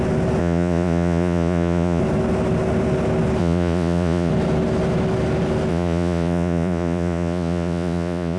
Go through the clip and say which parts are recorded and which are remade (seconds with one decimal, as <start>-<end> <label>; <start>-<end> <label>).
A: 0.0-0.4 recorded; 0.4-2.0 remade; 2.0-3.4 recorded; 3.4-4.3 remade; 4.3-5.7 recorded; 5.7-8.4 remade